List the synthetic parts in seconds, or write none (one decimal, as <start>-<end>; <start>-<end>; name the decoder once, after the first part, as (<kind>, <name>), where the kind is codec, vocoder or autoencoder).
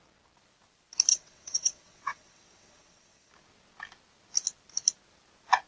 1.1-3.3 (vocoder, WaveNeXt)